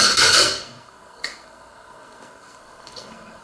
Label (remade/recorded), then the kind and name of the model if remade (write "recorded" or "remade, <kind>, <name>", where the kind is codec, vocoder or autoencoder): remade, codec, SNAC